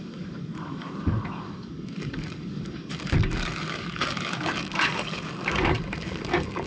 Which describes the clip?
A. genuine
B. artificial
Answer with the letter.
B